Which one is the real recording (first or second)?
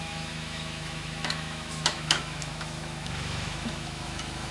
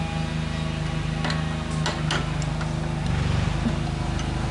second